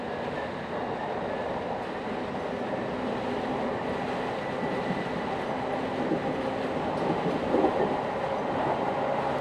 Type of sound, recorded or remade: recorded